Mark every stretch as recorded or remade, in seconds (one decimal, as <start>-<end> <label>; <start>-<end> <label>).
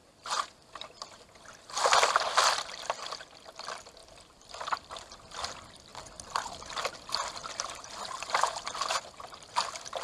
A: 0.0-4.0 recorded; 4.0-4.9 remade; 4.9-5.9 recorded; 5.9-9.6 remade; 9.6-10.0 recorded